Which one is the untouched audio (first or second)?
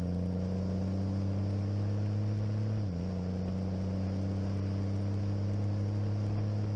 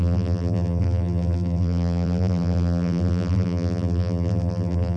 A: first